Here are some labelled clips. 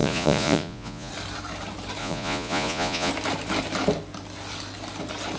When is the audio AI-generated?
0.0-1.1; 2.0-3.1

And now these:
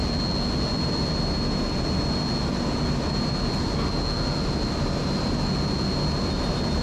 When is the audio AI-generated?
none

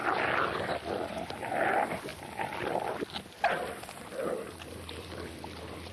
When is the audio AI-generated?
none

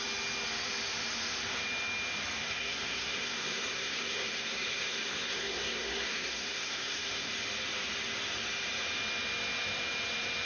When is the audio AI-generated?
2.4-7.3

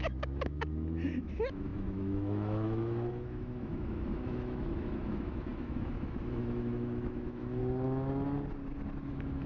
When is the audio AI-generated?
0.0-7.6; 9.1-9.5